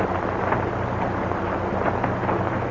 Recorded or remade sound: recorded